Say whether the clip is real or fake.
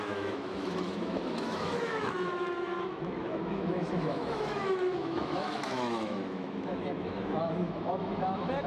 fake